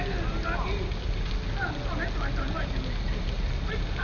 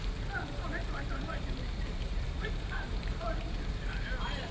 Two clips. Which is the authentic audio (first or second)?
first